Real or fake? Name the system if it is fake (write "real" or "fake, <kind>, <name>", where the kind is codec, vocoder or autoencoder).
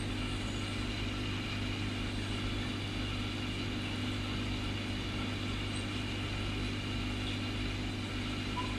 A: real